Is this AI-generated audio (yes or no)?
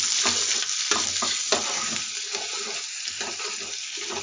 no